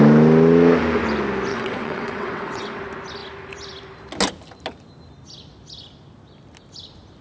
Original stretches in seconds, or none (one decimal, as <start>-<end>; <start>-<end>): 0.0-1.5; 2.8-7.2

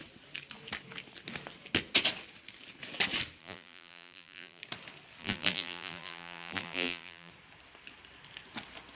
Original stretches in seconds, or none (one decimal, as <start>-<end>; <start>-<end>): 0.0-3.4; 4.6-5.2; 7.3-8.9

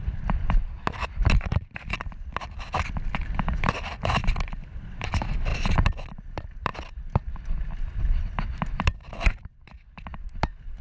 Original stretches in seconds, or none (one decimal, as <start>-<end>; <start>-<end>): 0.6-1.1; 6.7-7.8

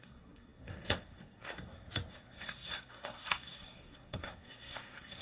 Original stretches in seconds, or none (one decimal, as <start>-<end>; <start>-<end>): none

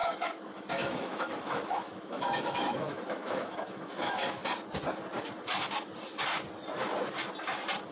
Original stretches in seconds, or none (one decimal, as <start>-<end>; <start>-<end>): 4.4-7.9